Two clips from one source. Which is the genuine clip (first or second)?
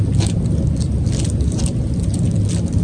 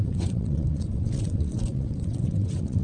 first